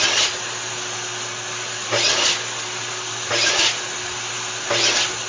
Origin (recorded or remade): recorded